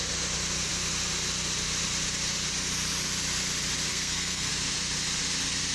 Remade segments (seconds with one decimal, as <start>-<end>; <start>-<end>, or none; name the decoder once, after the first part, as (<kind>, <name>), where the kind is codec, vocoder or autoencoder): 3.9-4.5 (codec, SNAC)